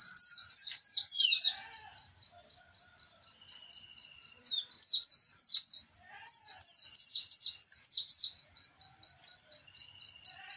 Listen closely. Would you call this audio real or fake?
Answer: real